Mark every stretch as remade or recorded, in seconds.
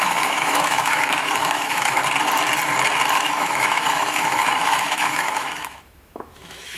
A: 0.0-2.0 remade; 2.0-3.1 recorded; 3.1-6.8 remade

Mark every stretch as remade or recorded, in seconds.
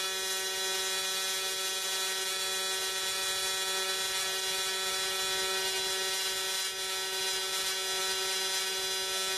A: 0.0-9.4 recorded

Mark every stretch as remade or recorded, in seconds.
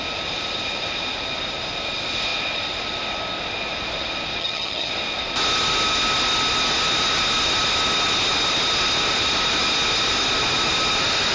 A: 0.0-4.4 recorded; 4.4-4.9 remade; 4.9-11.3 recorded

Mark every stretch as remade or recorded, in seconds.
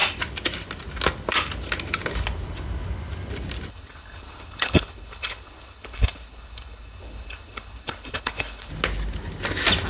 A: 0.0-3.7 recorded; 3.7-8.7 remade; 8.7-9.9 recorded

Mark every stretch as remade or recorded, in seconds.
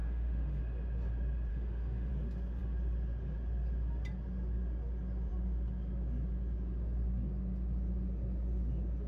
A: 0.0-0.6 remade; 0.6-1.5 recorded; 1.5-2.1 remade; 2.1-9.1 recorded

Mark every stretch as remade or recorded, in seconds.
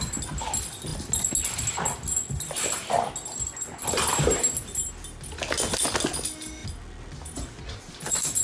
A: 0.0-8.4 recorded